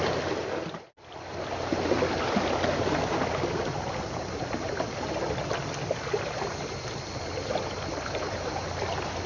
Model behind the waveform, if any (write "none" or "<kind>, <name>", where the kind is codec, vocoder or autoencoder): none